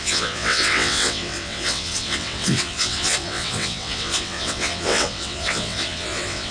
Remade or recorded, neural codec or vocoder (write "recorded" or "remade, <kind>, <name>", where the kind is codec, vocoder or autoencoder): remade, vocoder, WaveNeXt